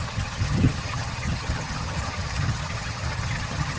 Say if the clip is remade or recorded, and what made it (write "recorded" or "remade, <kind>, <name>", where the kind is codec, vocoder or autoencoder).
remade, vocoder, HiFi-GAN